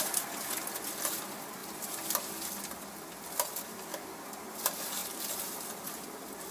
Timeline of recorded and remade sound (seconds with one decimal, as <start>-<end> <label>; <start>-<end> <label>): 0.0-6.5 recorded